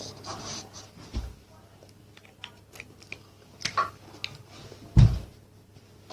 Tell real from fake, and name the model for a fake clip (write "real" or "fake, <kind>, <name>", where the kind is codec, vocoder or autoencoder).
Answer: real